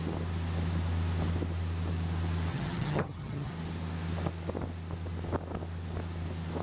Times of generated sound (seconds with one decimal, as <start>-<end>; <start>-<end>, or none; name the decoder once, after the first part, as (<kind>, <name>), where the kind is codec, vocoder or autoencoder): 2.5-3.5 (vocoder, HiFi-GAN)